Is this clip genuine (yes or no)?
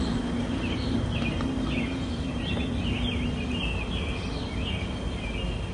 yes